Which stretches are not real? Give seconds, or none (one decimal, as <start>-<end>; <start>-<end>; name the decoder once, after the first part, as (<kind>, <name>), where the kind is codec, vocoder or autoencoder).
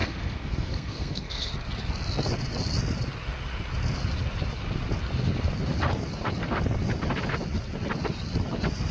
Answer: 0.0-1.5 (codec, SNAC)